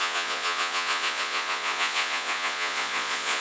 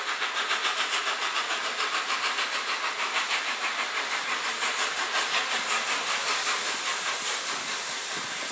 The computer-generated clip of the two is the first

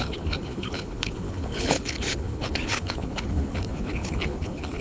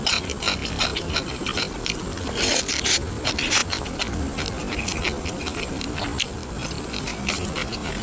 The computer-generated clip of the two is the first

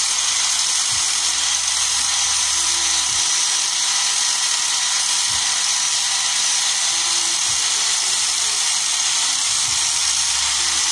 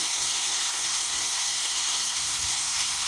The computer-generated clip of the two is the second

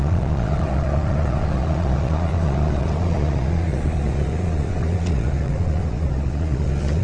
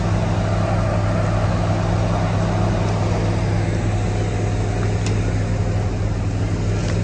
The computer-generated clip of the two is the first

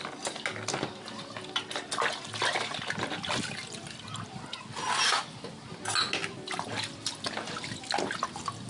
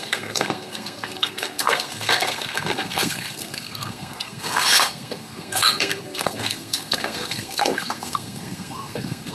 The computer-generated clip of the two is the second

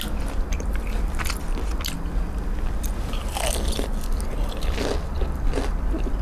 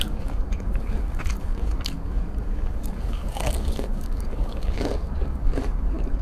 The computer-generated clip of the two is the second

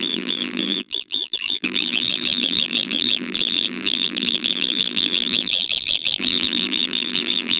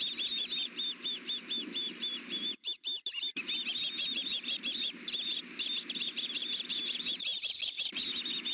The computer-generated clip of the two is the first